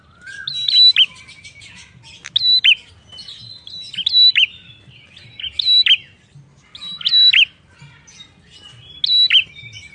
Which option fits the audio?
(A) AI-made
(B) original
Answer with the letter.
B